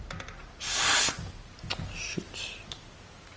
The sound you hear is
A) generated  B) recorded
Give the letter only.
B